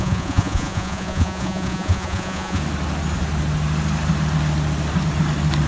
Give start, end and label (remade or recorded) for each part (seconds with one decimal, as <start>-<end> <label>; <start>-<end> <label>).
0.0-2.6 remade; 2.6-5.7 recorded